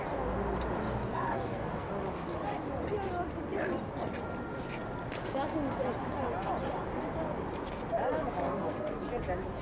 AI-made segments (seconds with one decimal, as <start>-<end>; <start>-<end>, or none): 1.1-1.9; 8.4-9.0